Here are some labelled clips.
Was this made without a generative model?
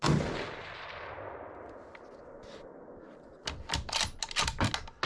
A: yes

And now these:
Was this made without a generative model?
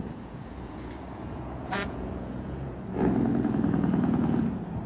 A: no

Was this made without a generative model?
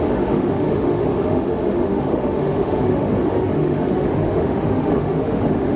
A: no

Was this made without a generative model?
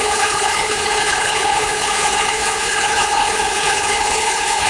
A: no